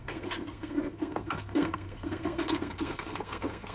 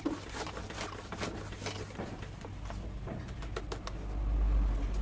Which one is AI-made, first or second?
first